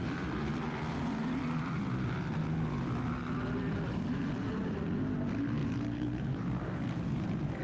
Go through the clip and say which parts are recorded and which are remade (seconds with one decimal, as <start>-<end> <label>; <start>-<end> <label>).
0.0-5.6 recorded; 5.6-7.6 remade